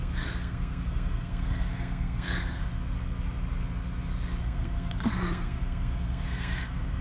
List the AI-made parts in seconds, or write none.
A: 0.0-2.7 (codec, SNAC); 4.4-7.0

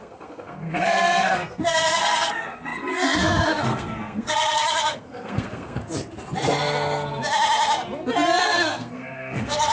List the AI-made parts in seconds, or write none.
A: 0.0-5.8 (codec, SNAC); 8.4-9.7

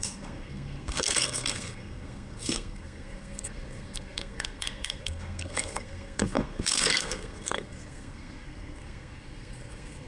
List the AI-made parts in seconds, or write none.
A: 0.0-10.1 (codec, SNAC)

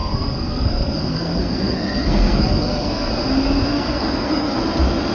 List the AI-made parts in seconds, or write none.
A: 0.0-3.1 (codec, SNAC); 3.7-4.6

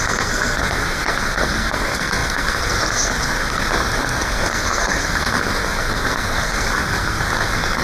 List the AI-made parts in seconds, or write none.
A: 0.0-7.8 (codec, SNAC)

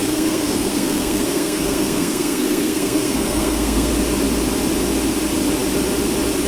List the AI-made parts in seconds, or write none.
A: 0.0-3.9 (codec, SNAC)